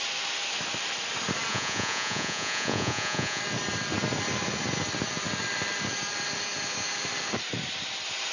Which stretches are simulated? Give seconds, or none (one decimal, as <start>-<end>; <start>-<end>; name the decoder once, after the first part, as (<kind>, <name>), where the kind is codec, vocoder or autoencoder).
1.5-3.4 (vocoder, Vocos)